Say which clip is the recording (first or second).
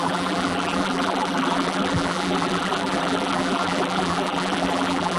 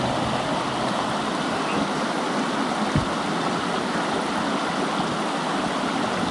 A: second